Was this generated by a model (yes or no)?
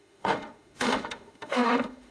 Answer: yes